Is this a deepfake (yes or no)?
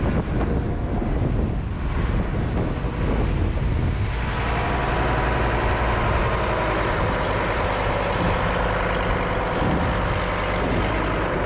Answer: no